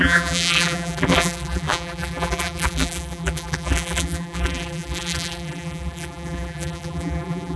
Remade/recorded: remade